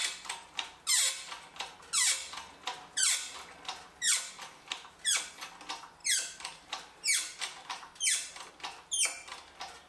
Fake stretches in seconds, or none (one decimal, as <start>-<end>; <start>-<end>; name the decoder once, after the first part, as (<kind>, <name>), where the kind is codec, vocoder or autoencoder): 0.0-0.8 (vocoder, BigVGAN v2); 6.0-8.5